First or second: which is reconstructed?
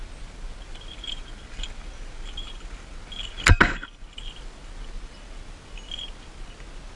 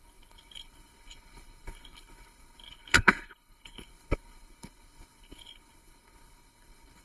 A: second